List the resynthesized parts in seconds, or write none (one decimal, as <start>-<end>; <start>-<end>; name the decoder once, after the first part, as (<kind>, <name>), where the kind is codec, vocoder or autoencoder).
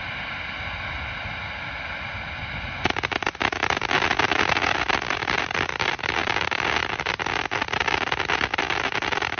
none